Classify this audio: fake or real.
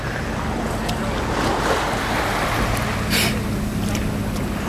real